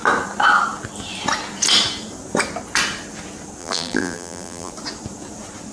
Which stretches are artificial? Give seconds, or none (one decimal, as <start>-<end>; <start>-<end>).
3.6-4.7